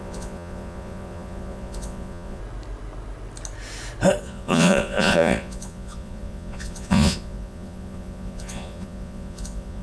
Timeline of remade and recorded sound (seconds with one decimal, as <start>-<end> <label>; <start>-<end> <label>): 0.0-2.4 remade; 2.4-4.2 recorded; 4.2-9.8 remade